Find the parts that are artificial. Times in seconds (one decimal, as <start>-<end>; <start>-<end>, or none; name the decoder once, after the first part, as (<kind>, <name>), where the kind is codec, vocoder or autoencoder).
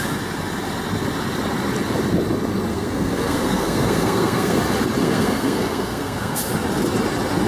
2.7-4.6 (codec, SNAC); 5.0-6.4